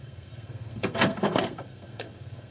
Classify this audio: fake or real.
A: fake